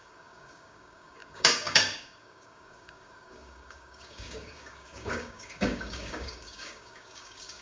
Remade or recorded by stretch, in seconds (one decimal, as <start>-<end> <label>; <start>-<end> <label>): 0.0-7.6 remade